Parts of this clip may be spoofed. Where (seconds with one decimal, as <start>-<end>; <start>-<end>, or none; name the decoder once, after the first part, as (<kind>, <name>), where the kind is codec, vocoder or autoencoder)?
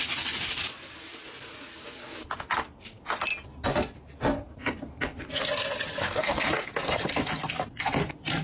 6.0-6.5 (codec, DAC)